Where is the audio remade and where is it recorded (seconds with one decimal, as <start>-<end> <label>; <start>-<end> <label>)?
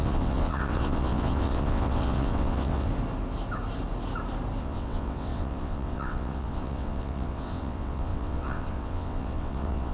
0.0-2.9 remade; 2.9-4.6 recorded; 4.6-9.9 remade